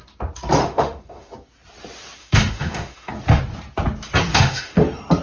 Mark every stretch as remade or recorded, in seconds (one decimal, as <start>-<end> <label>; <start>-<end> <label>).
0.0-0.6 recorded; 0.6-1.3 remade; 1.3-2.2 recorded; 2.2-3.1 remade; 3.1-4.3 recorded; 4.3-4.8 remade; 4.8-5.2 recorded